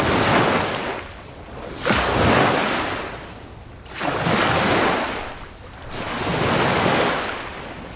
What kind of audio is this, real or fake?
real